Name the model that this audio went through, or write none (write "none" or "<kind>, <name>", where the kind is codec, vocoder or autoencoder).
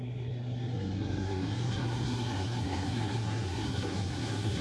codec, SNAC